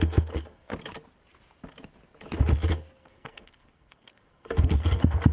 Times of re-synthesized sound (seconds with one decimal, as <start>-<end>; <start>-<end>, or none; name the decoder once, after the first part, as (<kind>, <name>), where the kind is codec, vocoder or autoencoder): 0.0-0.7 (codec, SNAC); 3.0-5.3